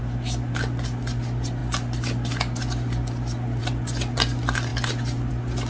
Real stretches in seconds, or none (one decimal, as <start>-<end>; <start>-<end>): 0.0-5.7